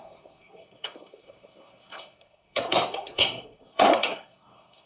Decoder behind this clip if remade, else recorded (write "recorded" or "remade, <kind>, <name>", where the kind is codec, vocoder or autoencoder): remade, codec, SNAC